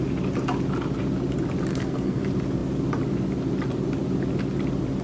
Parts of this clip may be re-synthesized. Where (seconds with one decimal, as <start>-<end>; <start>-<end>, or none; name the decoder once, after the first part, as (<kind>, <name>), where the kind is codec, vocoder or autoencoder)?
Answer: 1.7-2.2 (codec, SNAC)